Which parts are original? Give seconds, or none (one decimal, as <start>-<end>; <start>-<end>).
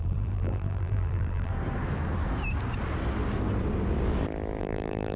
1.5-4.6